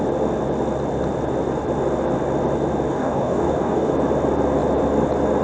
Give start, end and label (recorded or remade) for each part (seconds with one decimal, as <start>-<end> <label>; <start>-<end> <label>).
0.0-2.9 recorded; 2.9-3.9 remade; 3.9-5.4 recorded